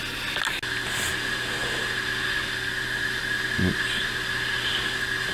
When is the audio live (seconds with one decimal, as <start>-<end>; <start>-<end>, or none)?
0.0-5.3